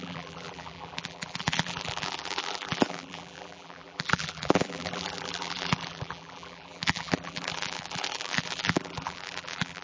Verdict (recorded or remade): remade